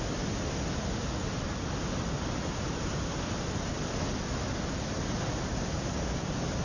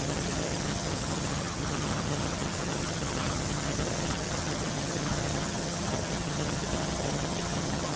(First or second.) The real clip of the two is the first